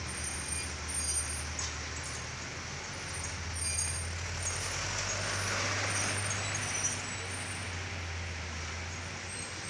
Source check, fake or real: real